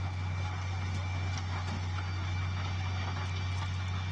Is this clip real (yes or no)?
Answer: yes